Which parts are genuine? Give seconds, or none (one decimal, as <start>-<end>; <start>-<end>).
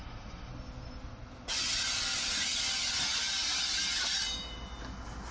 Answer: 0.5-5.3